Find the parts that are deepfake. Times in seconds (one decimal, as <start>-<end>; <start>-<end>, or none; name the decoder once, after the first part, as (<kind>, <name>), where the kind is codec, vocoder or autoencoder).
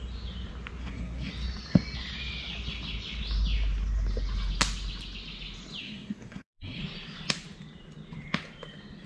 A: 0.8-1.3 (codec, SNAC); 5.8-6.8